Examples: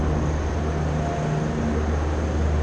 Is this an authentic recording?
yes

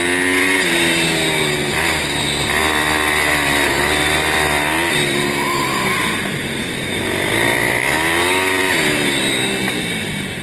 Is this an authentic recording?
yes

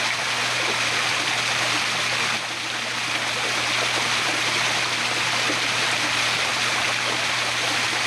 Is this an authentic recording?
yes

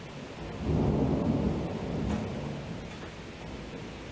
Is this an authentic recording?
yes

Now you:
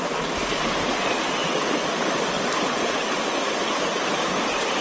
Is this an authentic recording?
yes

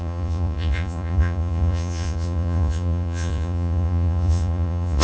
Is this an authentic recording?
no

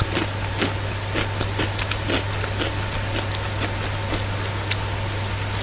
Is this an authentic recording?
yes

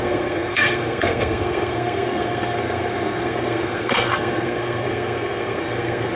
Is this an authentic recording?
no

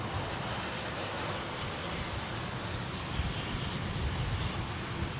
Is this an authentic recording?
yes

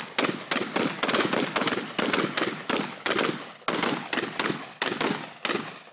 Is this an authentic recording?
yes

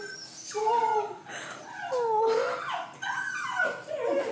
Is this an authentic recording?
yes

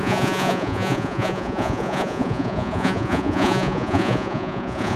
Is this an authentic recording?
no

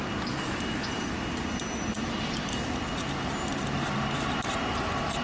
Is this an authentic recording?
yes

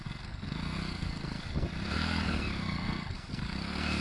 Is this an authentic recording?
no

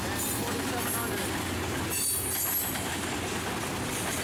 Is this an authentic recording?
yes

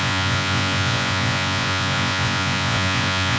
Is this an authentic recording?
no